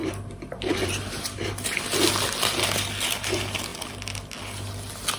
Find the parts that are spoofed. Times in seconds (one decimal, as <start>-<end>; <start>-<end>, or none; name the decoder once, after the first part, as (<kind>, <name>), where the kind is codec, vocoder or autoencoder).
0.0-1.8 (vocoder, BigVGAN v2)